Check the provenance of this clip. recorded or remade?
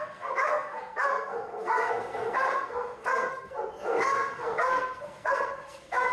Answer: remade